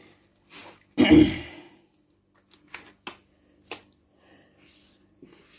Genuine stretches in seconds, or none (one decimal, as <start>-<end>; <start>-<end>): 0.0-5.6